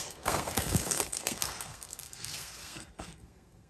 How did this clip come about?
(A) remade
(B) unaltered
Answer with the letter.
A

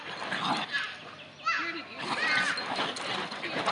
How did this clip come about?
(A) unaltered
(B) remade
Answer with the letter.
A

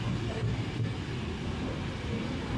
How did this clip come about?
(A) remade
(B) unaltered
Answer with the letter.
B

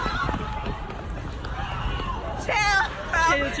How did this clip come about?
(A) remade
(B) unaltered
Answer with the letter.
B